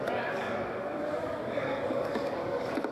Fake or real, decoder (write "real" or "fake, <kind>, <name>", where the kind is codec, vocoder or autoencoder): fake, codec, DAC